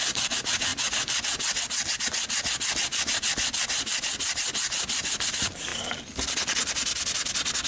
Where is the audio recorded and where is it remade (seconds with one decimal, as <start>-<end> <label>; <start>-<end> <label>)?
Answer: 0.0-0.7 remade; 0.7-5.3 recorded; 5.3-5.7 remade; 5.7-7.7 recorded